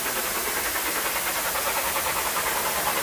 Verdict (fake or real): real